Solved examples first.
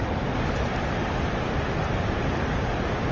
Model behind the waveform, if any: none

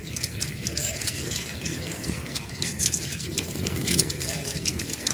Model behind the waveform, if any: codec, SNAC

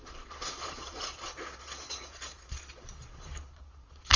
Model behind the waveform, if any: vocoder, Vocos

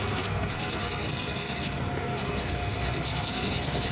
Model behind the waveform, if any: codec, SNAC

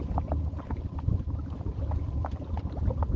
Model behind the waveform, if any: none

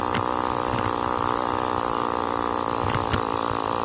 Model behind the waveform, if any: none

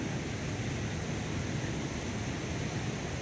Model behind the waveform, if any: none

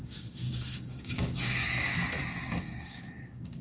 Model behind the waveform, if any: codec, DAC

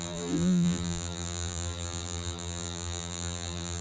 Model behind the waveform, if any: vocoder, BigVGAN v2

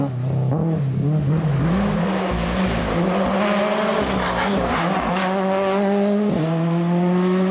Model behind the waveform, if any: none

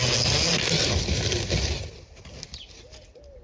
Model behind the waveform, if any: none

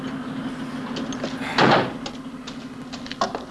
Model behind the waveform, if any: none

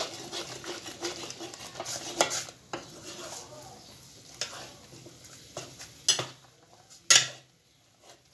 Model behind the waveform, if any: none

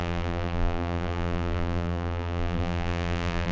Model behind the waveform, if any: vocoder, BigVGAN v2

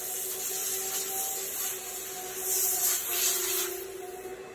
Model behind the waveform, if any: none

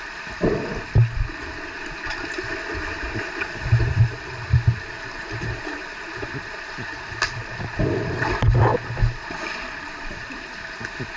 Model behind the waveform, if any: none